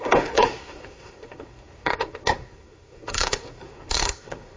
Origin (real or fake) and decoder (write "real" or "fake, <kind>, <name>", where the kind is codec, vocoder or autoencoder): fake, codec, SNAC